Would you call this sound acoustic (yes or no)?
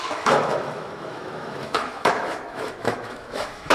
no